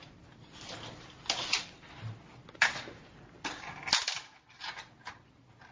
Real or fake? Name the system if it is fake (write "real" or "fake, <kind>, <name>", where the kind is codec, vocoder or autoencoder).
real